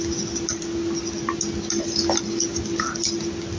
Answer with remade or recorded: recorded